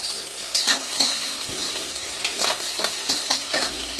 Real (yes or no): no